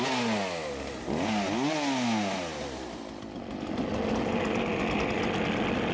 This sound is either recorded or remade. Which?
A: recorded